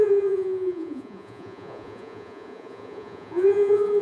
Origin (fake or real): fake